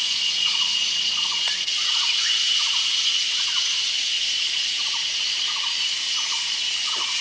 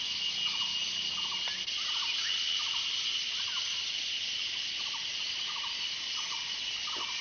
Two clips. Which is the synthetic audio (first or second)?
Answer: first